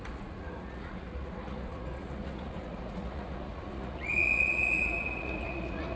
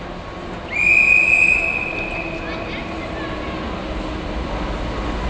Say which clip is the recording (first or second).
second